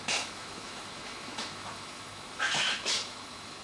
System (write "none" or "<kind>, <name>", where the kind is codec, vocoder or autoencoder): autoencoder, DAC-VAE